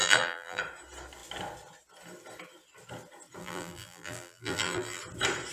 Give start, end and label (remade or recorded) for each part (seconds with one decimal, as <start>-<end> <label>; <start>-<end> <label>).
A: 0.0-0.6 remade; 0.6-3.4 recorded; 3.4-5.0 remade; 5.0-5.5 recorded